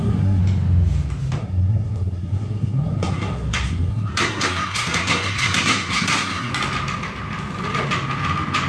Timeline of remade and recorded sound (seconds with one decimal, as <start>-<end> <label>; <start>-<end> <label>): 0.0-0.4 remade; 0.4-1.4 recorded; 1.4-6.5 remade; 6.5-8.7 recorded